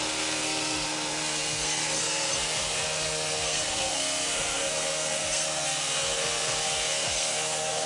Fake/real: fake